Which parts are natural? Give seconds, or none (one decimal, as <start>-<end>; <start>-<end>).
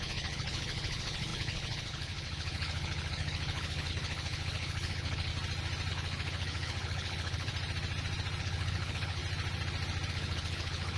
5.3-5.9; 7.5-8.4; 9.2-10.1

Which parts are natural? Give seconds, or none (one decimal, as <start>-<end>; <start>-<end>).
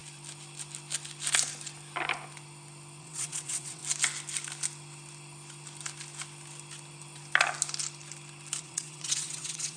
0.0-3.0; 3.8-8.6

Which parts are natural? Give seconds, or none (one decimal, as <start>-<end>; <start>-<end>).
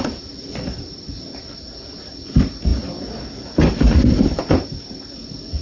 0.0-5.6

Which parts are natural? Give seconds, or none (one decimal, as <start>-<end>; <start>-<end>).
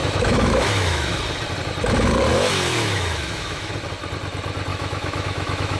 1.2-2.3; 3.7-4.7